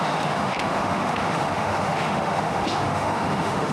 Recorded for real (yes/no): no